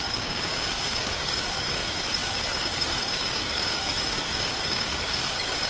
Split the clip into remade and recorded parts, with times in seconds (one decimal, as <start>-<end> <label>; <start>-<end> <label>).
0.0-5.7 remade